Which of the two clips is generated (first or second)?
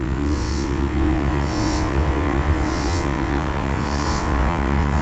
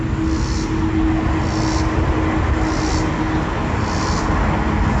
first